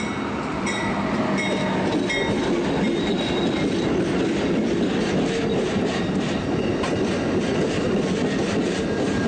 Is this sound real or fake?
real